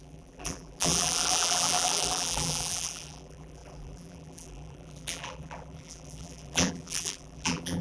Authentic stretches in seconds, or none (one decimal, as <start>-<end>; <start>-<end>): none